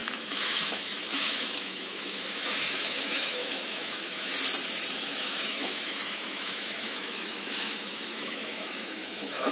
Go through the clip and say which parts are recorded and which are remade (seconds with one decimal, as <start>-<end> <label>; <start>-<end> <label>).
0.0-4.3 remade; 4.3-4.9 recorded; 4.9-9.5 remade

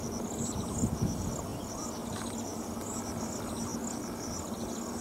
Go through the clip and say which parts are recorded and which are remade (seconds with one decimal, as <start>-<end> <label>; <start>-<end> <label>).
0.0-5.0 recorded